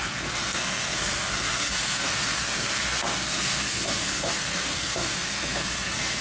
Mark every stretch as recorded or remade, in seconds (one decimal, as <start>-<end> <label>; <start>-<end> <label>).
0.0-6.2 remade